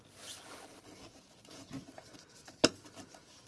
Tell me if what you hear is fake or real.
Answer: real